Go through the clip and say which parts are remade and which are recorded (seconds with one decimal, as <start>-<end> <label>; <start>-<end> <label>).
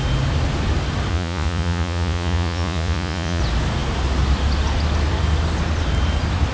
0.0-1.1 recorded; 1.1-3.4 remade; 3.4-6.5 recorded